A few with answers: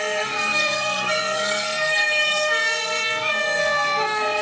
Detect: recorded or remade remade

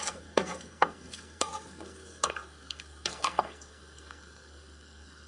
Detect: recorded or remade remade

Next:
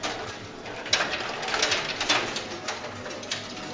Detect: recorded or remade recorded